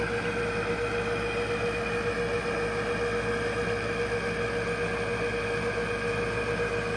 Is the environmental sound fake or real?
real